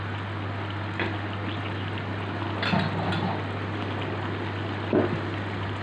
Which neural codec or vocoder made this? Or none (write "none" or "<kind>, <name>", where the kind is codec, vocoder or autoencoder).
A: none